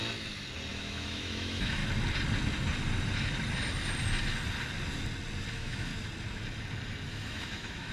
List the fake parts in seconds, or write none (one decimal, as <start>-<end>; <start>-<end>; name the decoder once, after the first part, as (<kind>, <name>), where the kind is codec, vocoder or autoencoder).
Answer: 0.7-1.8 (autoencoder, DAC-VAE); 5.5-5.9; 7.1-7.9